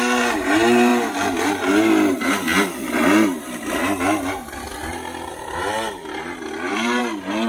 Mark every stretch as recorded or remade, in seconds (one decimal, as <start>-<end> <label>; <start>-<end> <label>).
0.0-6.0 recorded; 6.0-7.0 remade; 7.0-7.5 recorded